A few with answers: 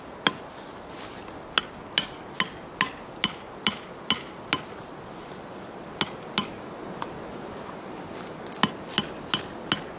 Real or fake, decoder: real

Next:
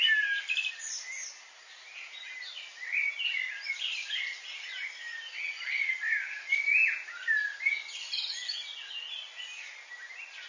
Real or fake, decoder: real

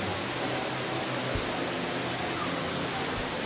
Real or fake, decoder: real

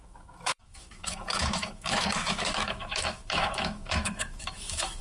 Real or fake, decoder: fake, autoencoder, DAC-VAE